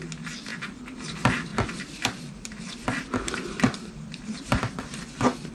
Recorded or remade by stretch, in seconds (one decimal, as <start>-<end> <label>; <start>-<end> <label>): 0.0-0.5 recorded; 0.5-1.0 remade; 1.0-1.5 recorded; 1.5-4.8 remade; 4.8-5.5 recorded